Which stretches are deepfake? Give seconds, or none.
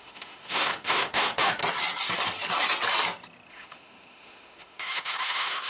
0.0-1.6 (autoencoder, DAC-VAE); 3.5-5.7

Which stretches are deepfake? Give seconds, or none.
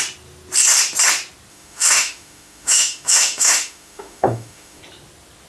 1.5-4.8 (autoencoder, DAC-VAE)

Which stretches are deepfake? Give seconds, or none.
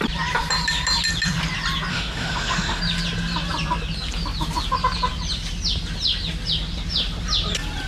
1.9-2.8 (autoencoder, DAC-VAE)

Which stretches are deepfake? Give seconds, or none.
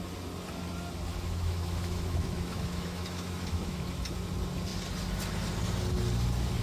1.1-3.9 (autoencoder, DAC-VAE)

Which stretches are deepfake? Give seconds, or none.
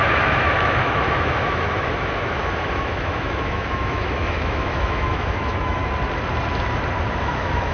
0.0-5.8 (autoencoder, DAC-VAE); 7.2-7.7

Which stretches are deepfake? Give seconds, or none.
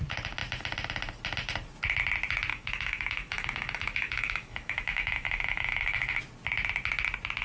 2.5-6.2 (autoencoder, DAC-VAE)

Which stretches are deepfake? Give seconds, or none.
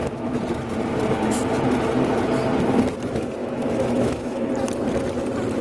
3.4-4.5 (autoencoder, DAC-VAE)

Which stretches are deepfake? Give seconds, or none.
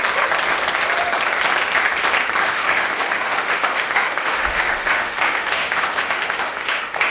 2.4-7.1 (autoencoder, DAC-VAE)